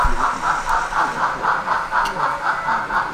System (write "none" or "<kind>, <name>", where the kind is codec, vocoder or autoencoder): none